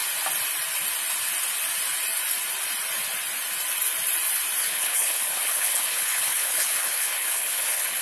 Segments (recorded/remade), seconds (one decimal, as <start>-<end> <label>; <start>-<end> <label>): 0.0-4.6 recorded; 4.6-8.0 remade

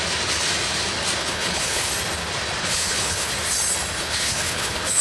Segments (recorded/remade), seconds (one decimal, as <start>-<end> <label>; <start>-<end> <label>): 0.0-1.2 recorded; 1.2-1.9 remade; 1.9-2.6 recorded; 2.6-3.3 remade; 3.3-4.0 recorded; 4.0-5.0 remade